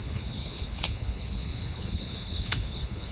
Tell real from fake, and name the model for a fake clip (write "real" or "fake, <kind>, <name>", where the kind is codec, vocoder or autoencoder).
fake, codec, HILCodec